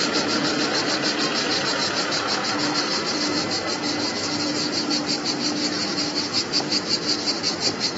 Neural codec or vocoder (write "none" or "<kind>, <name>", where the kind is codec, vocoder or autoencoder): none